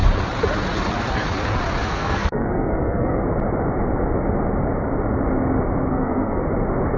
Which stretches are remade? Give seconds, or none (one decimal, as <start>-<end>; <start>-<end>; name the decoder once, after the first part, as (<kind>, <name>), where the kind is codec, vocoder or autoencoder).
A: 1.9-3.2 (codec, SNAC); 5.9-6.4